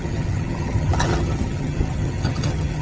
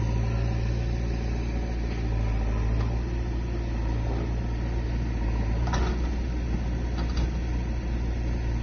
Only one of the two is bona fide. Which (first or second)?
second